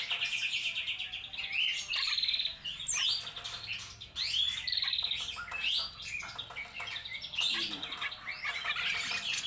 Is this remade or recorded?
recorded